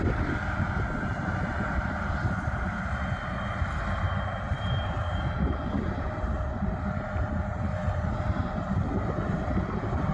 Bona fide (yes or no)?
no